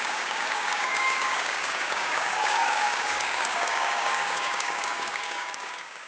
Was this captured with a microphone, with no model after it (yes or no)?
no